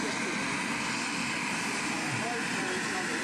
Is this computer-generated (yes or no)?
no